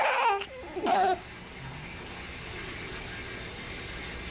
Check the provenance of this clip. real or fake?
real